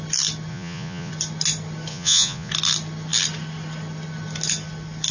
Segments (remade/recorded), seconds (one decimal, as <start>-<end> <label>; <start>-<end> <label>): 0.0-0.5 recorded; 0.5-1.1 remade; 1.1-1.9 recorded; 1.9-2.5 remade; 2.5-5.1 recorded